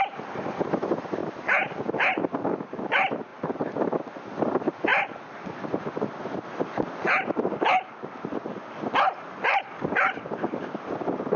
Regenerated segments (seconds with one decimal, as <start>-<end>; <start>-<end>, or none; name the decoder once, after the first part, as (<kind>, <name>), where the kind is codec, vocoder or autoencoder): none